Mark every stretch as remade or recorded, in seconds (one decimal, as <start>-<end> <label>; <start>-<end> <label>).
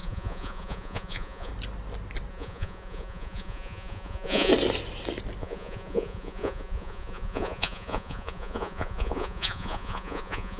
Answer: 0.0-1.5 remade; 1.5-2.3 recorded; 2.3-4.5 remade; 4.5-5.4 recorded; 5.4-10.6 remade